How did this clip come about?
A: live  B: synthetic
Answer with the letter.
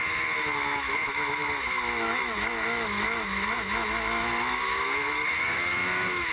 B